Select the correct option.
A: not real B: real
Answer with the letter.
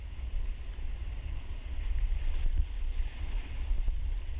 B